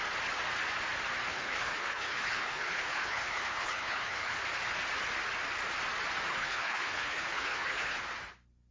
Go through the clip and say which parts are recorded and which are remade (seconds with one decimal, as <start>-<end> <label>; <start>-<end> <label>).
0.0-1.3 recorded; 1.3-4.4 remade; 4.4-6.3 recorded; 6.3-8.0 remade; 8.0-8.7 recorded